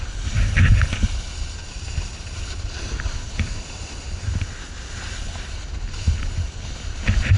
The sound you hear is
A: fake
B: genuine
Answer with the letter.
B